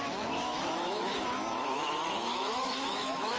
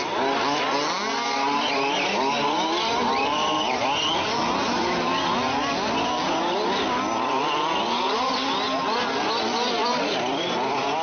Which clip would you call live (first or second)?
second